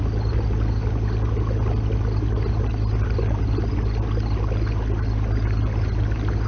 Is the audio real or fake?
real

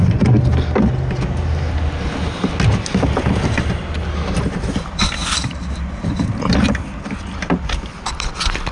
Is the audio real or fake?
real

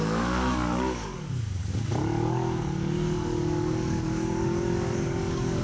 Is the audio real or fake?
fake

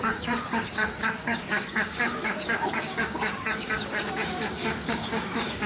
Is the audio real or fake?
fake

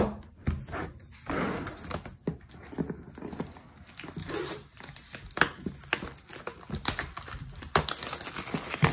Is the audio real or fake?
real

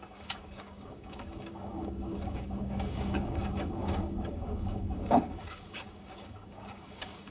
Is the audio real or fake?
fake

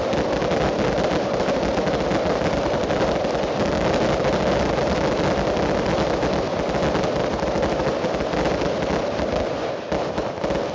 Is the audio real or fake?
real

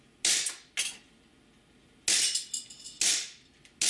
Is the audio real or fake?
real